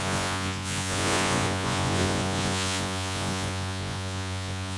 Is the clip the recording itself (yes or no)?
no